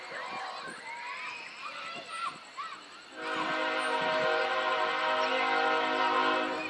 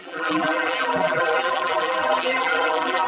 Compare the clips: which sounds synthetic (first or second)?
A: second